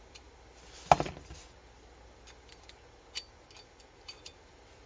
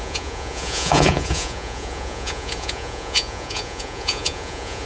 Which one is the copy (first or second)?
second